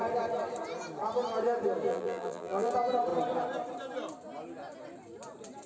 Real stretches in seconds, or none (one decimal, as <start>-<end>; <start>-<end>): 0.0-1.9; 2.7-5.7